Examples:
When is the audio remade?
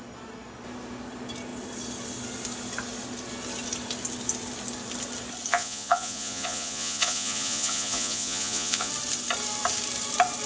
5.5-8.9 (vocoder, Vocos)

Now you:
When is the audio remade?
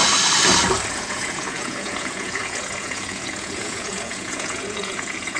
0.9-5.4 (vocoder, Vocos)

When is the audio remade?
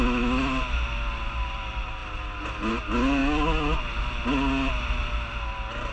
none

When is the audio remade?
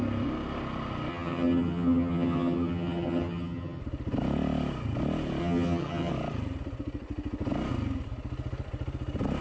1.1-3.8 (vocoder, HiFi-GAN); 5.4-6.1